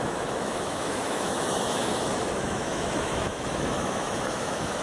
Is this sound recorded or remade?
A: remade